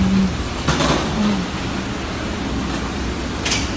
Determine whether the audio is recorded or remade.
recorded